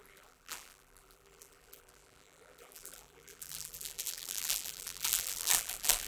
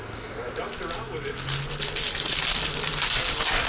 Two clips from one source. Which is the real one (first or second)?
second